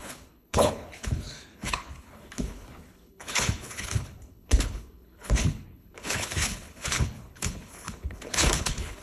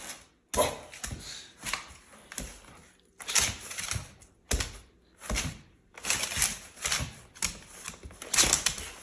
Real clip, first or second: second